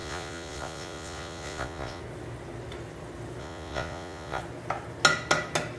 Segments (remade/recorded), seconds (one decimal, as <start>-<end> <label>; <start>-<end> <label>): 0.0-2.0 remade; 2.0-3.4 recorded; 3.4-4.4 remade; 4.4-5.8 recorded